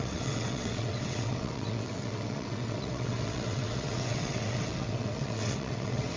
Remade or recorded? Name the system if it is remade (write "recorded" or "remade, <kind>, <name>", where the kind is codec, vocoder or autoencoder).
remade, vocoder, WaveNeXt